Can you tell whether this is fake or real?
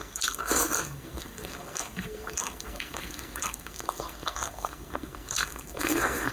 fake